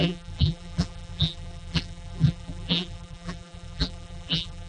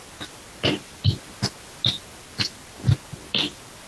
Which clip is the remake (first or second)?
first